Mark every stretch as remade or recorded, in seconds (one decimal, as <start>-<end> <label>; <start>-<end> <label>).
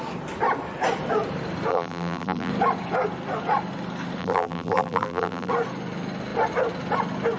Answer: 0.0-1.7 recorded; 1.7-2.5 remade; 2.5-4.2 recorded; 4.2-5.5 remade; 5.5-7.4 recorded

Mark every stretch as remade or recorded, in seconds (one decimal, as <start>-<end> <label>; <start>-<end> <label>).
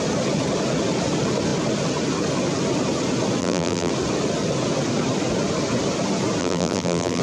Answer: 0.0-3.4 recorded; 3.4-3.9 remade; 3.9-6.4 recorded; 6.4-7.2 remade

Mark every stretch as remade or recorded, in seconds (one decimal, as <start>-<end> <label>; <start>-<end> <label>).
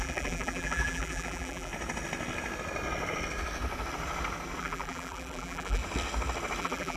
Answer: 0.0-1.7 remade; 1.7-4.6 recorded; 4.6-5.8 remade; 5.8-6.6 recorded; 6.6-7.0 remade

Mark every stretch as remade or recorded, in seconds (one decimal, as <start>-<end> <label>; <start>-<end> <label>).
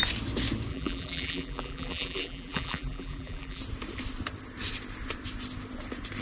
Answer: 0.0-0.7 recorded; 0.7-3.6 remade; 3.6-6.2 recorded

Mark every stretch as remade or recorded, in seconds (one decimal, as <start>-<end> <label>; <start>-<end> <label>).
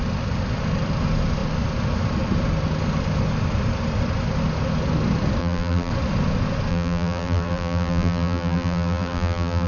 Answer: 0.0-5.4 recorded; 5.4-5.9 remade; 5.9-6.7 recorded; 6.7-9.7 remade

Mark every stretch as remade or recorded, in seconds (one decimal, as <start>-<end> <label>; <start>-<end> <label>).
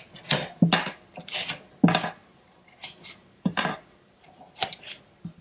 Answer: 0.0-2.2 recorded; 2.2-5.0 remade; 5.0-5.4 recorded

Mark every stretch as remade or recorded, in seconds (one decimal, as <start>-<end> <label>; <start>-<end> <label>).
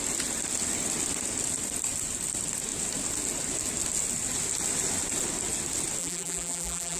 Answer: 0.0-6.0 recorded; 6.0-7.0 remade